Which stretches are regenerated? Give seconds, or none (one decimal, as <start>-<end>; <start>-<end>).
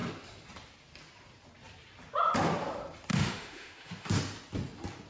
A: 3.1-4.1